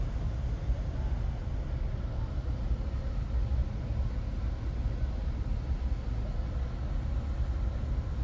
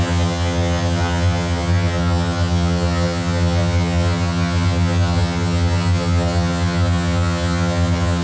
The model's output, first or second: second